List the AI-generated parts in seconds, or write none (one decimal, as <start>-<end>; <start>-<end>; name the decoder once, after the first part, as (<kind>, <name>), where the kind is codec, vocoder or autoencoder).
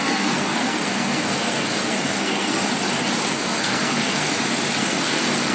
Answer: 0.0-2.6 (codec, SNAC); 3.3-4.3; 4.8-5.5